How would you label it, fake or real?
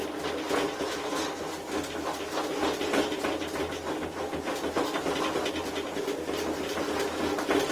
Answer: real